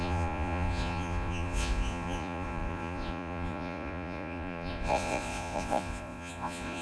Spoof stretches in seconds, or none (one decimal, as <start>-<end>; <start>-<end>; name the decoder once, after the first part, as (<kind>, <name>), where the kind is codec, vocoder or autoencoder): 0.0-6.8 (vocoder, Vocos)